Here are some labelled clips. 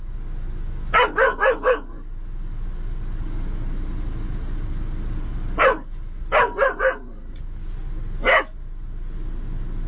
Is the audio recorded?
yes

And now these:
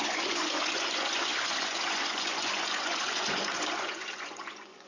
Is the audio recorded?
no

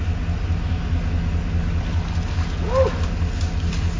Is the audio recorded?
yes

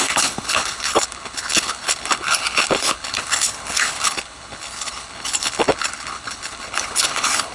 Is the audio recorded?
no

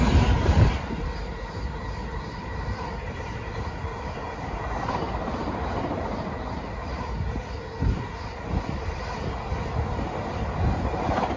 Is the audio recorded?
yes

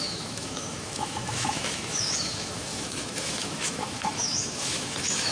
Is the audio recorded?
no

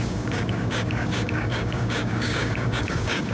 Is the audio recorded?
no